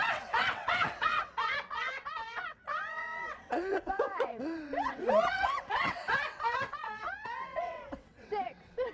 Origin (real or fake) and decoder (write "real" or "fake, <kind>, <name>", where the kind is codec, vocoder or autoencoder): fake, vocoder, WaveNeXt